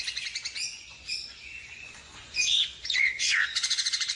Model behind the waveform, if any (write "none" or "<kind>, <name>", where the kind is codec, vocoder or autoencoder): vocoder, Vocos